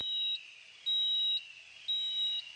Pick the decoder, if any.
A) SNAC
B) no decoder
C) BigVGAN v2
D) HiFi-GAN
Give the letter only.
B